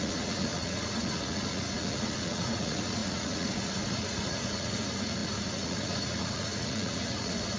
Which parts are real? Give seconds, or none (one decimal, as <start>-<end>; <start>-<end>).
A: none